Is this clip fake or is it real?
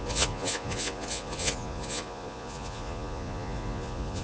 fake